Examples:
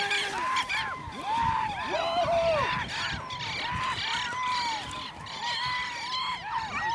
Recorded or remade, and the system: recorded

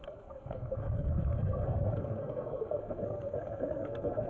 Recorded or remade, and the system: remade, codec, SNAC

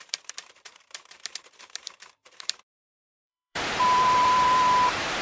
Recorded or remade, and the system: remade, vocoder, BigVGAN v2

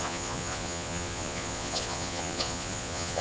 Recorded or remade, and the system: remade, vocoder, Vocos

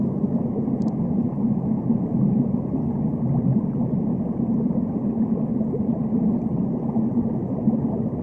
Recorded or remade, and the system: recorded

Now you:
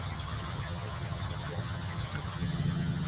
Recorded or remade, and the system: remade, vocoder, HiFi-GAN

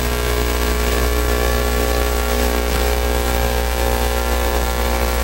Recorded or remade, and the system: remade, codec, DAC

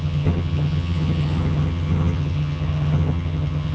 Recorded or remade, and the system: remade, vocoder, HiFi-GAN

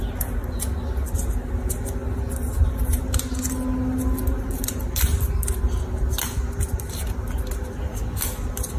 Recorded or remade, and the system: recorded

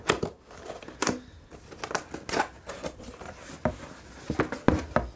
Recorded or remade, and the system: recorded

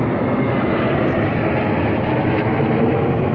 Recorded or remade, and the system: recorded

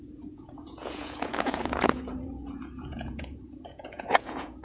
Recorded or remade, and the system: remade, vocoder, Vocos